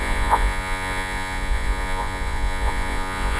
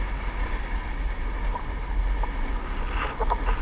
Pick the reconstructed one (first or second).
first